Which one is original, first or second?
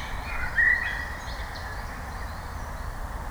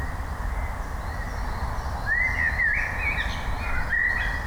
second